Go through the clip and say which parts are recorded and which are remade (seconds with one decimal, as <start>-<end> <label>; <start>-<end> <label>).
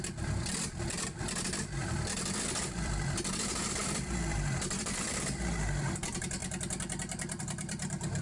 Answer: 0.0-6.4 remade; 6.4-7.4 recorded; 7.4-8.2 remade